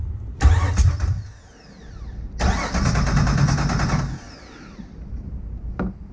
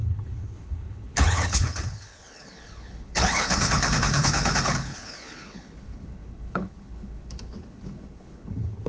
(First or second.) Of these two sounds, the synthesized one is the second